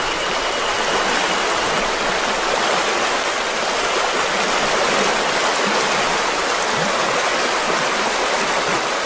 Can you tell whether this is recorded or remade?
recorded